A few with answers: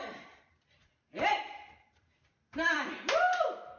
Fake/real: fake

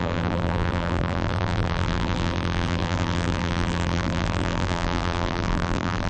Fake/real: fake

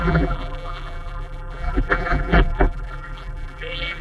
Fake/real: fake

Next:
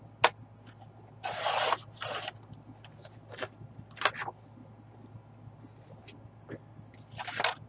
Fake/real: real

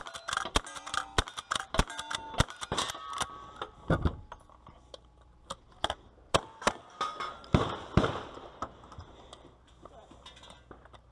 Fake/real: fake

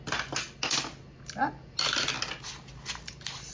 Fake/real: real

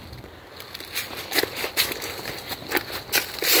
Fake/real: real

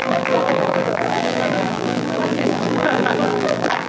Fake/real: fake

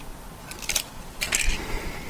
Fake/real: fake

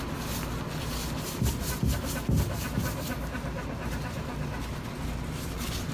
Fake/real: real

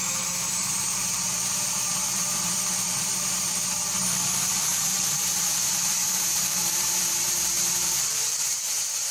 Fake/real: fake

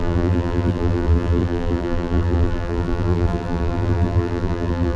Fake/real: fake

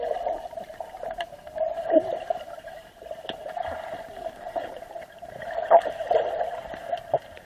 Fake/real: fake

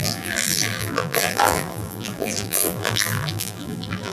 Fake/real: fake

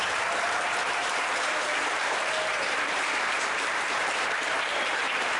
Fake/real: fake